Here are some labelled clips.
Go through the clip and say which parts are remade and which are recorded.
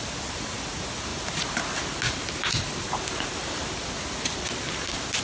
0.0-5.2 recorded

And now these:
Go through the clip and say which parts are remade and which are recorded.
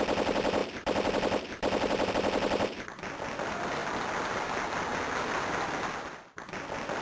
0.0-7.0 recorded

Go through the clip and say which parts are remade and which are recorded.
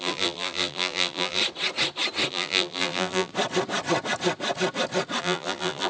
0.0-1.4 remade; 1.4-2.3 recorded; 2.3-3.3 remade; 3.3-5.2 recorded; 5.2-5.9 remade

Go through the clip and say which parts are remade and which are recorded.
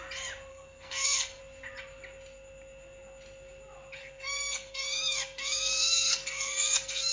0.0-0.5 recorded; 0.5-1.4 remade; 1.4-4.0 recorded; 4.0-7.1 remade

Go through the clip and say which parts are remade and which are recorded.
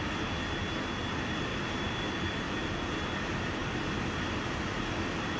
0.0-1.5 recorded; 1.5-2.7 remade; 2.7-5.4 recorded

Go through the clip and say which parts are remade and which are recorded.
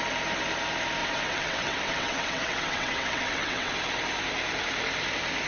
0.0-1.0 recorded; 1.0-3.7 remade; 3.7-5.5 recorded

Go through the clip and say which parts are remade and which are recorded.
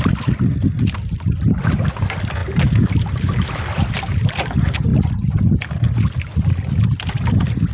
0.0-7.7 recorded